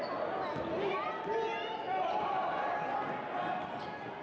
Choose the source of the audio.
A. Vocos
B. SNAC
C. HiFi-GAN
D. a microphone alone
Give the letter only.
D